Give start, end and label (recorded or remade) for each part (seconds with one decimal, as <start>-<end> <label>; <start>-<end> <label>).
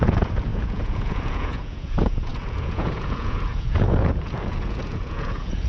0.0-5.7 remade